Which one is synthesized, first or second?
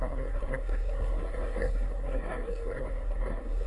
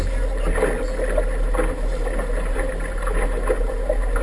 first